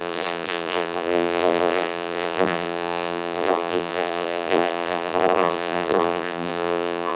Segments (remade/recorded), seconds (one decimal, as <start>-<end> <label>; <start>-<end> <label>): 0.0-7.1 remade